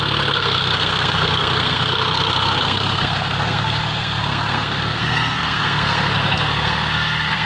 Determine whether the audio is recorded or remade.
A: remade